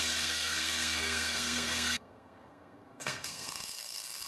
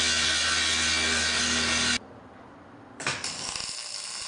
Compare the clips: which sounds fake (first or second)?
first